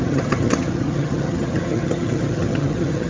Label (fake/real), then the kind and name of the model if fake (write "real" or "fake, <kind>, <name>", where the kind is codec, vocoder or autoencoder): fake, vocoder, HiFi-GAN